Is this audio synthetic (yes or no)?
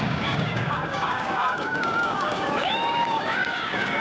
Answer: yes